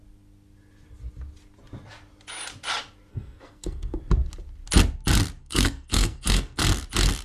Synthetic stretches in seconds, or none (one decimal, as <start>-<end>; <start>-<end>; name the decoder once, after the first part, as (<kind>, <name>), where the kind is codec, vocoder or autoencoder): 3.1-4.0 (codec, SNAC); 5.4-6.6